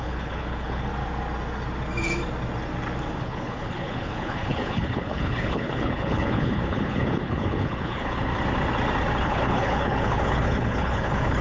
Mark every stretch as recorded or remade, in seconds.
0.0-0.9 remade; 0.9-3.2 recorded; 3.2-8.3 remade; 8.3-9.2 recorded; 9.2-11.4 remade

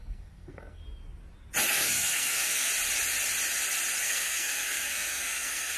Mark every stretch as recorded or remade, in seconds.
0.0-0.8 remade; 0.8-1.7 recorded; 1.7-2.7 remade; 2.7-4.0 recorded; 4.0-5.8 remade